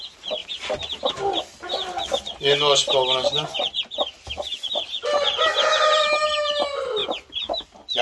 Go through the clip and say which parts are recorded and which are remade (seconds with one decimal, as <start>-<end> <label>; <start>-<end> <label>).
0.0-0.4 recorded; 0.4-1.1 remade; 1.1-7.0 recorded; 7.0-7.5 remade; 7.5-8.0 recorded